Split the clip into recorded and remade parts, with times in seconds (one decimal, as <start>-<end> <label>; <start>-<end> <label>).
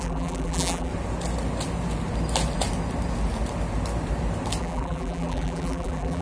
0.0-0.9 remade; 0.9-4.6 recorded; 4.6-6.2 remade